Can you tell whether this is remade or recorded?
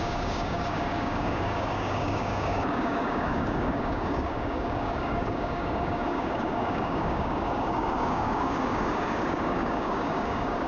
remade